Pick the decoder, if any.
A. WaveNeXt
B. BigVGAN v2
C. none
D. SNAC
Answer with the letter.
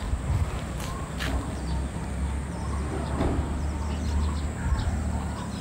C